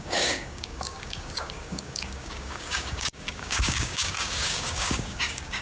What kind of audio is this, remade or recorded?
remade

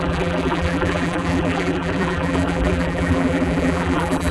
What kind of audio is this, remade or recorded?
remade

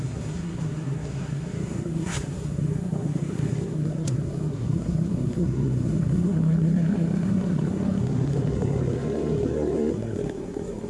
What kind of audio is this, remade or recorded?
remade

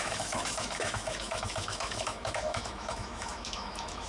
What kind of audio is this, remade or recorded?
remade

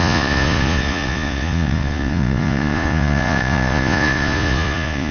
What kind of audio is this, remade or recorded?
remade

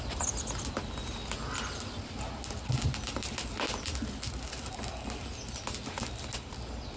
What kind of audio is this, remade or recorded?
recorded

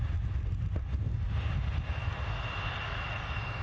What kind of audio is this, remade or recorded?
recorded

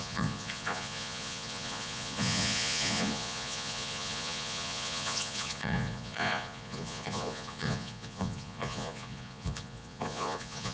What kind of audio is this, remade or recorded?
remade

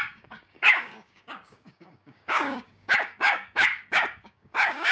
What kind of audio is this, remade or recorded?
remade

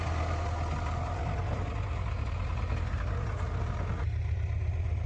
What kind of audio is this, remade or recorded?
recorded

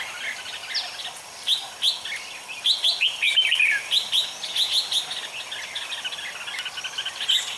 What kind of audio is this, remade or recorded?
recorded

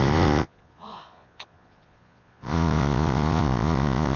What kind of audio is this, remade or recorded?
remade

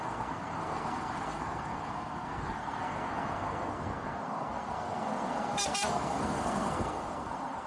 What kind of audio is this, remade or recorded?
remade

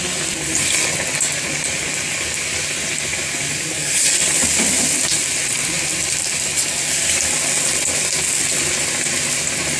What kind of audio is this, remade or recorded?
recorded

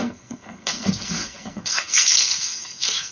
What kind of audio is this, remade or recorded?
remade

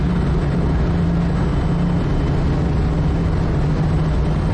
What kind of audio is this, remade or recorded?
recorded